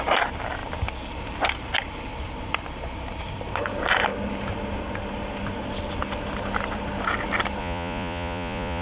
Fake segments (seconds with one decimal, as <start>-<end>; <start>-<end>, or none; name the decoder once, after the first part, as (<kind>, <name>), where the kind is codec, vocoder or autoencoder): 7.6-8.8 (vocoder, Vocos)